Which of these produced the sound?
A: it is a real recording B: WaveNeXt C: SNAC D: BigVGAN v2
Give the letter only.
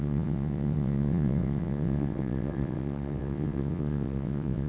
B